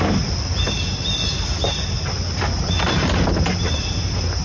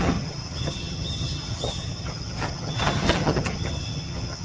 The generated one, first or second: second